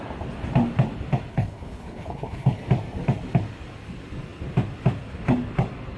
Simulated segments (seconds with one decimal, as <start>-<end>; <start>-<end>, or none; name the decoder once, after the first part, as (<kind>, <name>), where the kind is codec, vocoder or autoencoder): 1.3-2.6 (codec, HILCodec)